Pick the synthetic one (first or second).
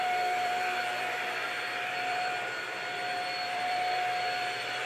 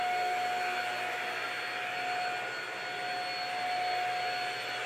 first